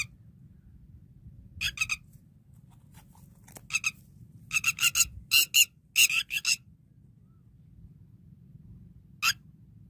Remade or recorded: recorded